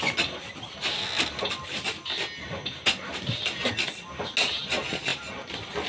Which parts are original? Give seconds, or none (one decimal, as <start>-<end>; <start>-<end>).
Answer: 0.0-5.9